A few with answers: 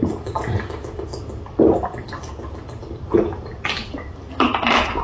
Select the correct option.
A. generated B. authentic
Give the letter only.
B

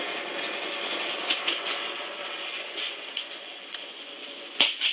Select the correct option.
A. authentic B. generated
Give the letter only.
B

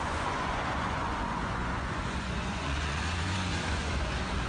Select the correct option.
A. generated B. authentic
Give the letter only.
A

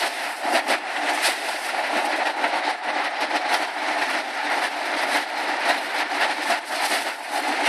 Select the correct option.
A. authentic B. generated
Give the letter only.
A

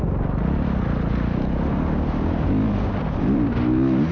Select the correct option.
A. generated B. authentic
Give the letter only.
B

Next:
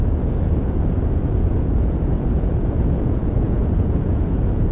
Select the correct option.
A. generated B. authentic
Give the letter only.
A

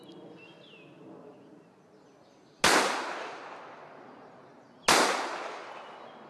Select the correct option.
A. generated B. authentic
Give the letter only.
B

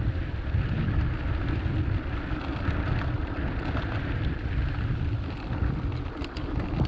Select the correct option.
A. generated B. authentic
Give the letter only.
B